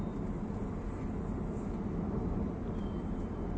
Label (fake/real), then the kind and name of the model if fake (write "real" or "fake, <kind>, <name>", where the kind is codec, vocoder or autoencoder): real